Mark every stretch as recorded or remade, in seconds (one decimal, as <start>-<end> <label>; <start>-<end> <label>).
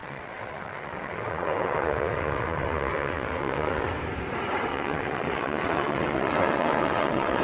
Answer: 0.0-3.9 remade; 3.9-4.7 recorded; 4.7-7.4 remade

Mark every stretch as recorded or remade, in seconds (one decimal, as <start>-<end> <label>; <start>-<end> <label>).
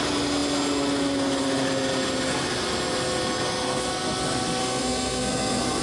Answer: 0.0-4.6 recorded; 4.6-5.8 remade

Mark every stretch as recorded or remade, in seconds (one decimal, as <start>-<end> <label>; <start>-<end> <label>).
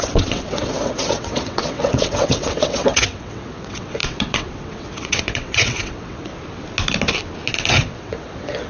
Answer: 0.0-6.3 remade; 6.3-7.7 recorded; 7.7-8.7 remade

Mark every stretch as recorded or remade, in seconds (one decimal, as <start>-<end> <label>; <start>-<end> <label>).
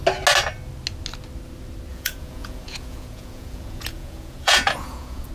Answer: 0.0-1.9 recorded; 1.9-5.3 remade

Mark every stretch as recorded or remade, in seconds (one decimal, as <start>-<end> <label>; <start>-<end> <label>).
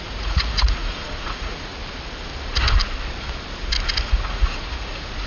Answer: 0.0-1.7 remade; 1.7-4.0 recorded; 4.0-5.3 remade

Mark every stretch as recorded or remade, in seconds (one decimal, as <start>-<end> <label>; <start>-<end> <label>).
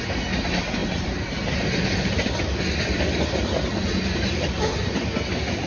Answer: 0.0-5.7 recorded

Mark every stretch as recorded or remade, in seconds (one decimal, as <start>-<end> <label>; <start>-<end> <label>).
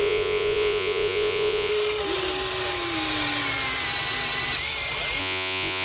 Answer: 0.0-1.7 remade; 1.7-5.2 recorded; 5.2-5.8 remade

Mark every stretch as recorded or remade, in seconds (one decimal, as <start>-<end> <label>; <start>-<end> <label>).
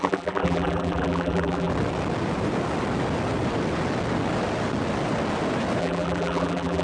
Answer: 0.0-1.7 remade; 1.7-5.8 recorded; 5.8-6.8 remade